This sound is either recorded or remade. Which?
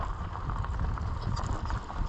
recorded